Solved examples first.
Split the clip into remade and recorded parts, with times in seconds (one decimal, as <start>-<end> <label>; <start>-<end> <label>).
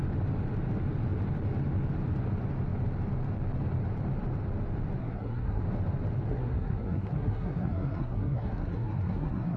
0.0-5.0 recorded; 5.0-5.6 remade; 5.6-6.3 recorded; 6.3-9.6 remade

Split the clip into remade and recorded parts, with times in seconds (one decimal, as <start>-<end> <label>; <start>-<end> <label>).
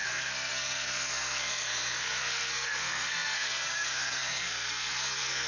0.0-5.5 remade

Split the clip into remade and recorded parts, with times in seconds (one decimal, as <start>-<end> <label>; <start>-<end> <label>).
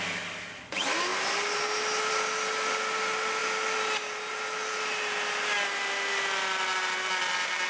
0.0-7.7 recorded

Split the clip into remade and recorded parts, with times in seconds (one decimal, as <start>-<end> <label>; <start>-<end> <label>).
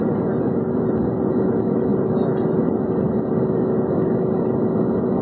0.0-5.2 recorded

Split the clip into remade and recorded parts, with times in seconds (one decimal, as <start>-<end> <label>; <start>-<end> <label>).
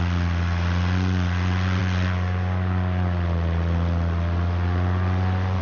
0.0-5.6 recorded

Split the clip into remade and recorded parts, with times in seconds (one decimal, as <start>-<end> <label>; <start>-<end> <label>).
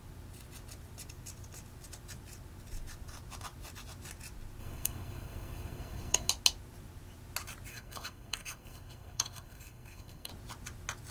0.0-4.6 recorded; 4.6-6.3 remade; 6.3-7.7 recorded; 7.7-10.3 remade; 10.3-11.1 recorded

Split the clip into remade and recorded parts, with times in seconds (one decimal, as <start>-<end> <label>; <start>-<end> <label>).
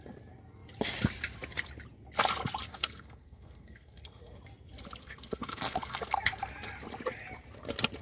0.0-2.7 recorded; 2.7-4.4 remade; 4.4-5.0 recorded; 5.0-6.5 remade; 6.5-8.0 recorded